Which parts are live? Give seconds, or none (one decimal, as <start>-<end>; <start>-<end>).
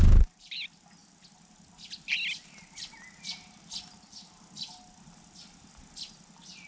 0.0-6.7